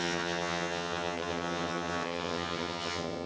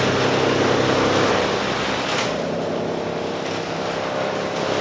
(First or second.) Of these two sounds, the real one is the second